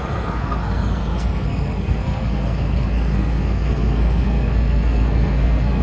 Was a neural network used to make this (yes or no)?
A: yes